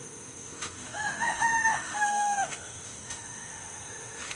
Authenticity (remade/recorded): remade